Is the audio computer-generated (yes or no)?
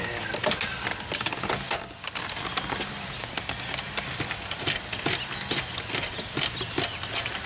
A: no